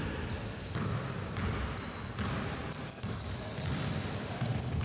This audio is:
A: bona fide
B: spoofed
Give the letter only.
A